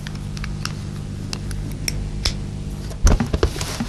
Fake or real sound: real